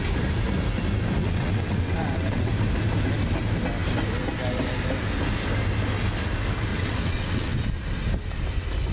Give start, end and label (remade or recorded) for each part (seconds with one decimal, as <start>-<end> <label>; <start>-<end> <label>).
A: 0.0-1.2 recorded; 1.2-2.5 remade; 2.5-6.7 recorded; 6.7-7.6 remade; 7.6-8.9 recorded